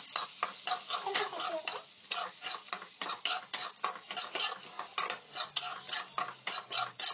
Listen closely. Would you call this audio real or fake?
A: real